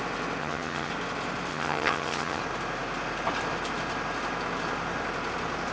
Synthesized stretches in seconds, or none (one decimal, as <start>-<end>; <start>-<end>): 0.4-0.9; 1.5-2.4